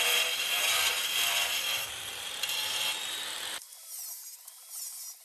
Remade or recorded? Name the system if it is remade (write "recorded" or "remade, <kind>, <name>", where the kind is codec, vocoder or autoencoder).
remade, vocoder, BigVGAN v2